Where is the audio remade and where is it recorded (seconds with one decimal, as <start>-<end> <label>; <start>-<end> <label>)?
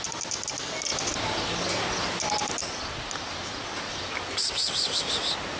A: 0.0-5.6 recorded